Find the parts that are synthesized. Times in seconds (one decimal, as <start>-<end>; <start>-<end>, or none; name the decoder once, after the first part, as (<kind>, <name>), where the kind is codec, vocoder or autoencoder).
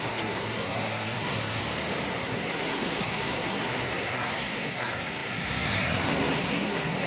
0.0-1.6 (codec, SNAC); 2.1-7.1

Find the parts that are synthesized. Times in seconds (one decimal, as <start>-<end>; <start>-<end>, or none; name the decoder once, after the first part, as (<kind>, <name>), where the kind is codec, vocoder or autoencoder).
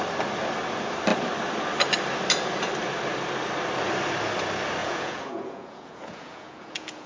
4.8-7.1 (vocoder, Vocos)